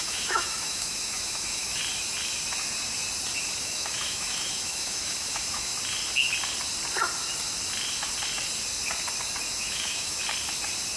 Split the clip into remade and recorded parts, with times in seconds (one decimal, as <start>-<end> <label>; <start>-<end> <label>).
0.0-1.8 remade; 1.8-3.6 recorded; 3.6-5.7 remade; 5.7-9.5 recorded; 9.5-10.2 remade; 10.2-11.0 recorded